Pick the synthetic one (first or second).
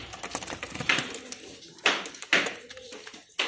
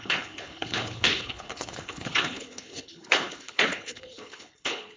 second